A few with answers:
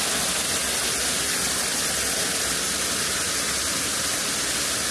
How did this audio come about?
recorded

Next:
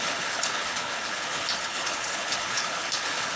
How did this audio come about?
remade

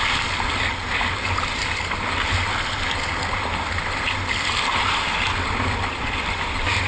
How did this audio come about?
recorded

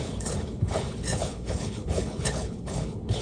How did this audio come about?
remade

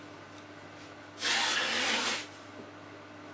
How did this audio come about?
recorded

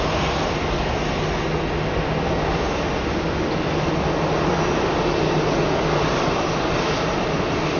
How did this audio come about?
recorded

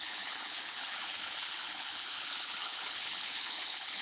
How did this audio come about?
remade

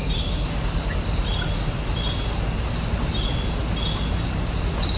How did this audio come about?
recorded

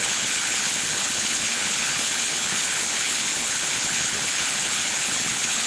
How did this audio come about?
remade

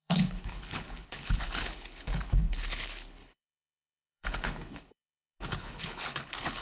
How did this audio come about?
remade